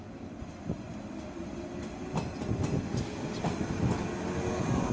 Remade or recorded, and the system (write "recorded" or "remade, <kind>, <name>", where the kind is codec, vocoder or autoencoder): recorded